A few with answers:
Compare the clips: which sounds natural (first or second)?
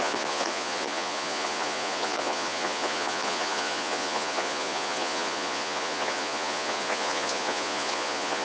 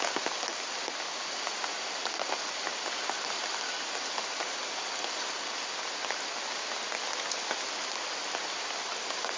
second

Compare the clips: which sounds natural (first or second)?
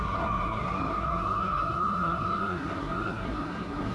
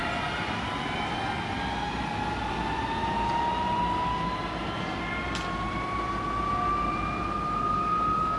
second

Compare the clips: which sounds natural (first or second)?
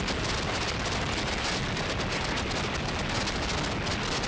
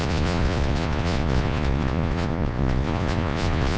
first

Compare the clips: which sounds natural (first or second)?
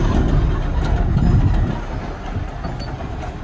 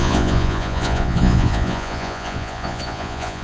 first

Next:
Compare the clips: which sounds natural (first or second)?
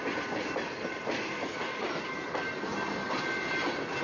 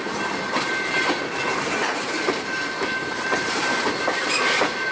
first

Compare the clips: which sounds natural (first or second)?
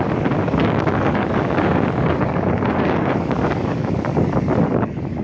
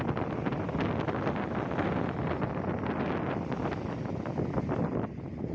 second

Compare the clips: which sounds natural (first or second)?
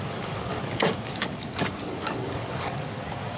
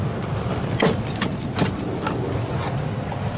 second